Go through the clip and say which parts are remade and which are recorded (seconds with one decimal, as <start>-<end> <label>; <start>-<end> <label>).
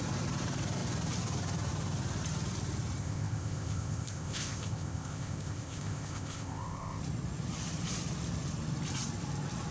0.0-3.0 recorded; 3.0-7.0 remade; 7.0-9.7 recorded